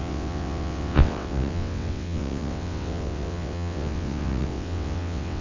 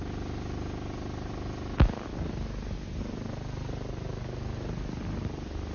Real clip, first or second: second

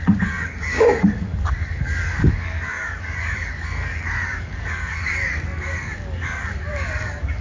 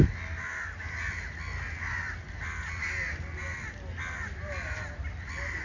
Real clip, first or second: second